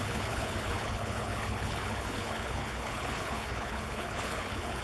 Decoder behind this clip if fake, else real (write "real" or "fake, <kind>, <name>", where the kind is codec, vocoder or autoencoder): fake, codec, HILCodec